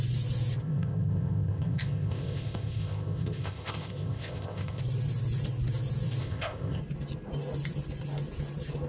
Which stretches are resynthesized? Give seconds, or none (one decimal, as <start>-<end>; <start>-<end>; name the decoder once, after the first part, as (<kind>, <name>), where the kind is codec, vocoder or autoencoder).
0.6-4.8 (codec, ZipCodec); 6.2-6.8